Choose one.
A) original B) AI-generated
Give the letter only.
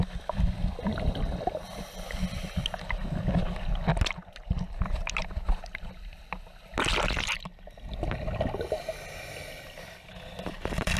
A